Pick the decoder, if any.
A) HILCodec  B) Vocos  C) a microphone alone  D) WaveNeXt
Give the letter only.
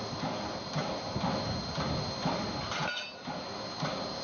C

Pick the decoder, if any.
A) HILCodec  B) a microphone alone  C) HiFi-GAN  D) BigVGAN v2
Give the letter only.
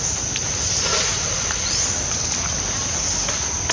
B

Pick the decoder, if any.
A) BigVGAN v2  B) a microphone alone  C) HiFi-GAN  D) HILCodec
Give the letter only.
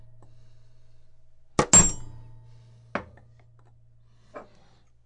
B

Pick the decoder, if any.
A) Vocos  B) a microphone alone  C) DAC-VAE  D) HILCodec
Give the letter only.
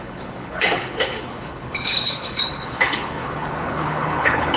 D